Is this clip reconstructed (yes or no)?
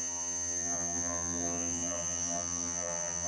yes